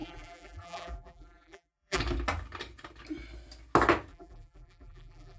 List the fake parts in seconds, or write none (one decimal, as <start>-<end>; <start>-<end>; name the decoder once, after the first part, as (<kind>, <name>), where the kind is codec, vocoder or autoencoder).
0.0-2.0 (vocoder, BigVGAN v2); 4.1-5.4